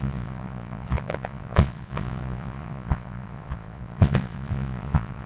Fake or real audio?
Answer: fake